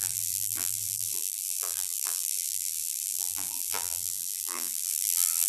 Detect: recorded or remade remade